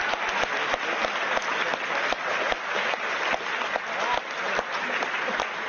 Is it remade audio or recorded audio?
recorded